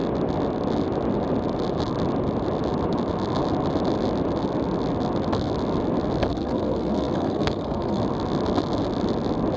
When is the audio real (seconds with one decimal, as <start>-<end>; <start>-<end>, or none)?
0.0-6.3; 8.0-9.6